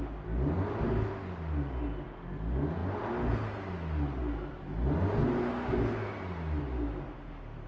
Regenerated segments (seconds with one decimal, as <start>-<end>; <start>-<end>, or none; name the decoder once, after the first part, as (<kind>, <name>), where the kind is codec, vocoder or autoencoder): none